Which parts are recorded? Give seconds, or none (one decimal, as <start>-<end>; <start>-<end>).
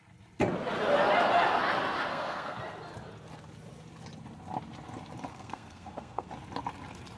0.0-2.1; 2.6-5.3; 6.3-7.2